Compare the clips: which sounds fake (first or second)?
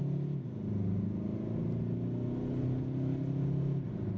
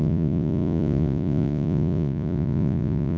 second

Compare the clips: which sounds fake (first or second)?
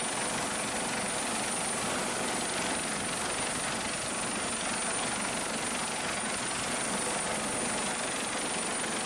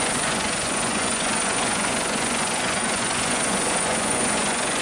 second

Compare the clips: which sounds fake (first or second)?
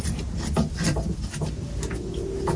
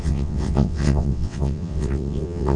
second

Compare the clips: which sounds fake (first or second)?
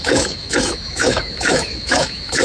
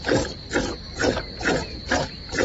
first